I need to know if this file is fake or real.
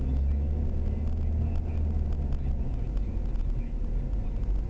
real